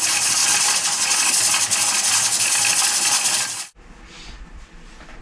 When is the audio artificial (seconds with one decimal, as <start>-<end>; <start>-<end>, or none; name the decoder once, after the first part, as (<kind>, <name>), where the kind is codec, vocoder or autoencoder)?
none